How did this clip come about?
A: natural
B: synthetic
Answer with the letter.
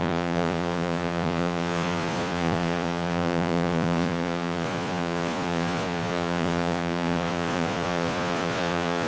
B